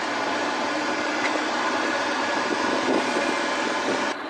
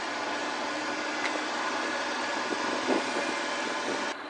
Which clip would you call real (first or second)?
second